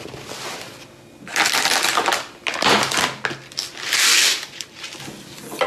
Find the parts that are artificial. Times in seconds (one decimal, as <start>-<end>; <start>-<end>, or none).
4.3-5.0